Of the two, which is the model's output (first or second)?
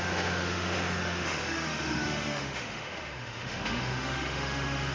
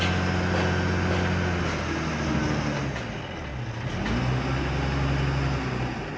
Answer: first